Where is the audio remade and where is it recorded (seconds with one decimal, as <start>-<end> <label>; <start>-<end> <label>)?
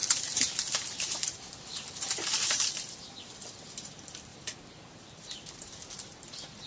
0.0-3.2 remade; 3.2-4.3 recorded; 4.3-6.3 remade; 6.3-6.7 recorded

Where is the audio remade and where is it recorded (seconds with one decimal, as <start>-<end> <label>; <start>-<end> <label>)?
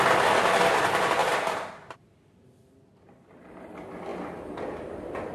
0.0-1.2 remade; 1.2-1.7 recorded; 1.7-4.1 remade; 4.1-4.6 recorded; 4.6-5.3 remade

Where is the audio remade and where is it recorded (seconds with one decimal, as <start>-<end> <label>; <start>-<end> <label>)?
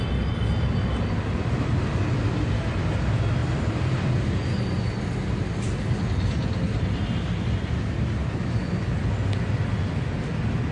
0.0-3.4 recorded; 3.4-4.1 remade; 4.1-10.7 recorded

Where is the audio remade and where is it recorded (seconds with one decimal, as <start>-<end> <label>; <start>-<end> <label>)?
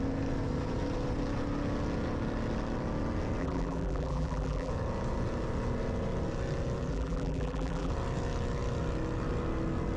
0.0-3.4 recorded; 3.4-4.7 remade; 4.7-6.9 recorded; 6.9-7.9 remade; 7.9-10.0 recorded